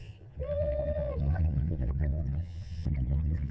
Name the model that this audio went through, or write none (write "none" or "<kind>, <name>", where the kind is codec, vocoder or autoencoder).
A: vocoder, Vocos